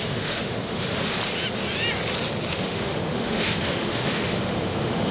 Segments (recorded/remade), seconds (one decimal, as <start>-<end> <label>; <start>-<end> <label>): 0.0-1.1 remade; 1.1-2.5 recorded; 2.5-5.1 remade